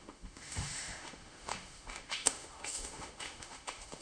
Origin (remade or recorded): remade